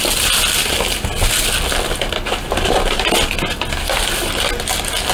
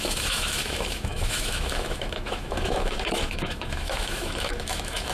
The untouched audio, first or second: first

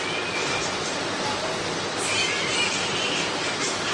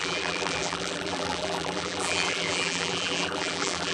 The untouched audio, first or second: first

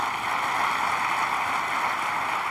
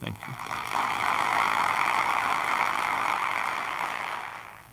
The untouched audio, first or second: first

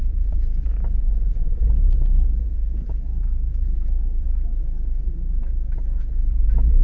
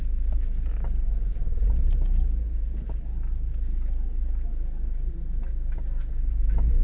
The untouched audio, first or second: second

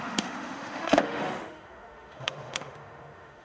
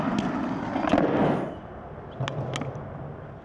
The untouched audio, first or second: second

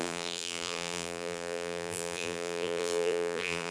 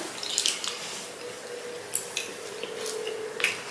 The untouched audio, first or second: second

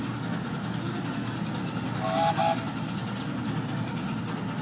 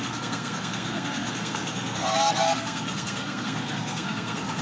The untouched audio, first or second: first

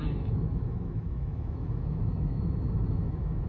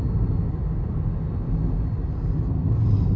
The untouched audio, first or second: second